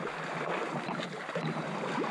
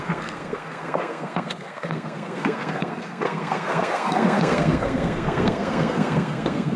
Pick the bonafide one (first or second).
first